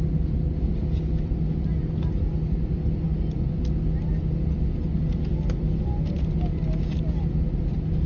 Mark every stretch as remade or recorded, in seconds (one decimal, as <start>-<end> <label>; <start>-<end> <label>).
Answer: 0.0-8.1 recorded